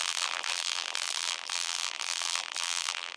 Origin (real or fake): fake